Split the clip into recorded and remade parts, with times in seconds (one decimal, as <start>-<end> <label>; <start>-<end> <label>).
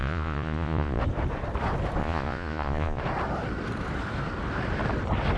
0.0-1.0 remade; 1.0-2.0 recorded; 2.0-3.0 remade; 3.0-5.4 recorded